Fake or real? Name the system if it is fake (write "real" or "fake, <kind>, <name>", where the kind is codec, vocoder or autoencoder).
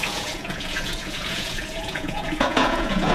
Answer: fake, vocoder, Vocos